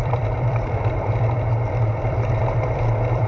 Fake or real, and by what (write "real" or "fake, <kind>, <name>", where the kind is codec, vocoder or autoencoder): fake, vocoder, BigVGAN v2